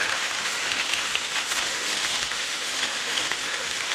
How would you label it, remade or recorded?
remade